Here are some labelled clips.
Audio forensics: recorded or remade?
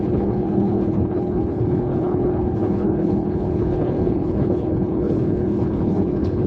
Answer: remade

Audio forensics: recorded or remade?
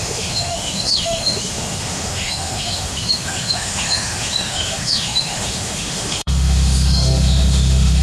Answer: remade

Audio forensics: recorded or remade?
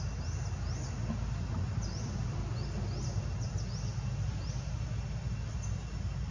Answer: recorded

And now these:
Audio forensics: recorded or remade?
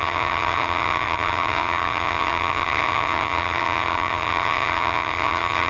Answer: remade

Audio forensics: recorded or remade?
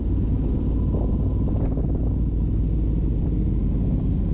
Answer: recorded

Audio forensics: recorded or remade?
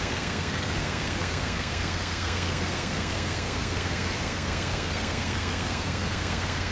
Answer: remade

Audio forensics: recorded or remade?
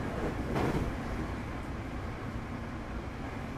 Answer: recorded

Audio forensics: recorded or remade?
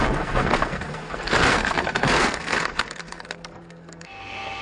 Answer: remade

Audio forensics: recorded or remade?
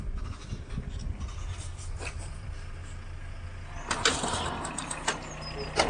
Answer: recorded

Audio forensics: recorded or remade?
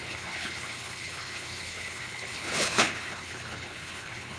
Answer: remade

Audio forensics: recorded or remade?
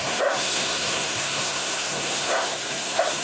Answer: remade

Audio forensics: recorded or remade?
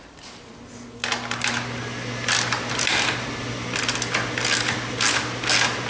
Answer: recorded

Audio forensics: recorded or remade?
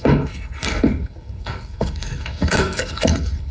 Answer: remade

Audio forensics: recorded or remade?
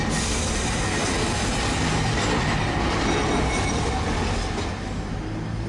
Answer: recorded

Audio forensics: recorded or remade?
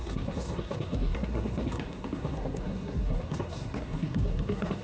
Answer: remade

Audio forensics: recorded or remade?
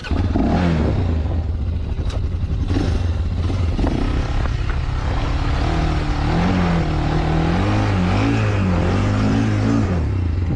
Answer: recorded